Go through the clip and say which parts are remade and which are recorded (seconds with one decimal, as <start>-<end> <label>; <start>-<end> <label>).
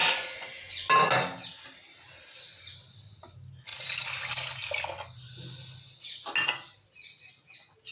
0.0-0.9 remade; 0.9-7.9 recorded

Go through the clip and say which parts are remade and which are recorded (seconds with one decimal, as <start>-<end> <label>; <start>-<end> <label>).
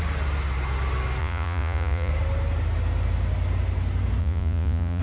0.0-1.2 recorded; 1.2-2.1 remade; 2.1-4.2 recorded; 4.2-5.0 remade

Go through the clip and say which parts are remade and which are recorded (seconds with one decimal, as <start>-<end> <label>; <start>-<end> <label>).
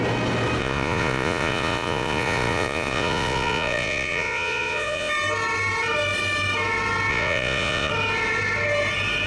0.0-0.6 recorded; 0.6-5.1 remade; 5.1-7.1 recorded; 7.1-7.9 remade; 7.9-9.3 recorded